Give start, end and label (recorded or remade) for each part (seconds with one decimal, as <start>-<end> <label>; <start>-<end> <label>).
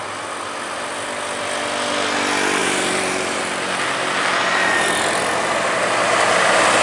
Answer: 0.0-2.6 recorded; 2.6-3.4 remade; 3.4-6.8 recorded